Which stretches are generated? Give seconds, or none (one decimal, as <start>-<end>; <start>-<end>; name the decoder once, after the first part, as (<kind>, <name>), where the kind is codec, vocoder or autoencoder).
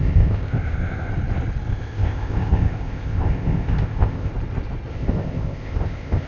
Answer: 0.0-1.1 (codec, ZipCodec); 1.7-4.3; 4.9-6.3